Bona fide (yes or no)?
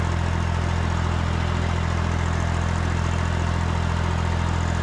yes